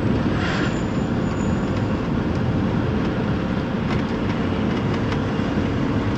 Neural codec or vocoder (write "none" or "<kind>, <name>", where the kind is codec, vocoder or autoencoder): none